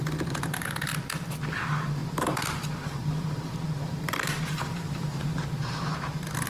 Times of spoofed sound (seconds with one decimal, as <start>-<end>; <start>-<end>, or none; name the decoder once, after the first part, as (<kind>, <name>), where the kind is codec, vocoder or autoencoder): 0.0-0.9 (vocoder, BigVGAN v2); 1.5-6.5